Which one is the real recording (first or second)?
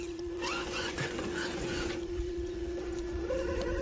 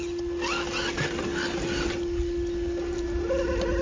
second